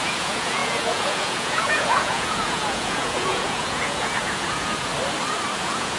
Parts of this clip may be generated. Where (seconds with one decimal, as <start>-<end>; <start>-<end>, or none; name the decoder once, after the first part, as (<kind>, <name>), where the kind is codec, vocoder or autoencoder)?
0.0-4.9 (vocoder, Vocos); 5.6-6.0